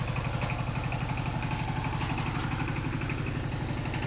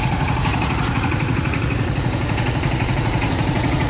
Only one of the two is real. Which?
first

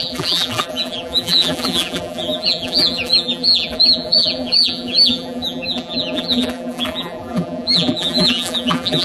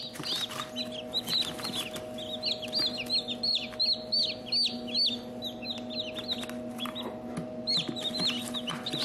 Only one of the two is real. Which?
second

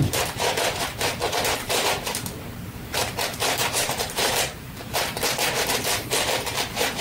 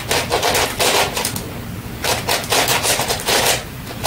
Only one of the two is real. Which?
second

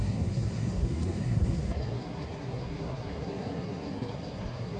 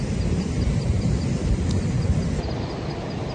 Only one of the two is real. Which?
second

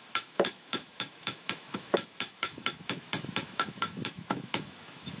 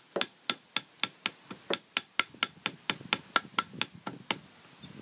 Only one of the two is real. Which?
second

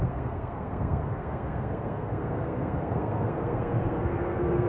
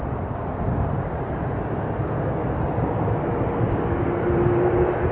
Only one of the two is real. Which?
second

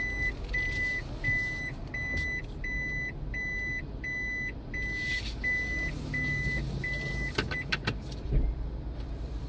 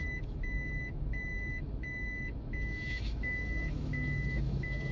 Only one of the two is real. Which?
first